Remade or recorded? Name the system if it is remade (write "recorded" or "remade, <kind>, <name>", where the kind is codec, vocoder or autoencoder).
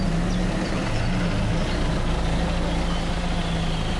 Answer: recorded